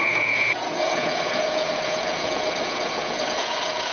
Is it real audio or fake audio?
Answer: fake